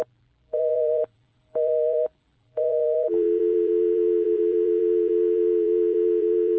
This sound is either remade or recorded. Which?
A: remade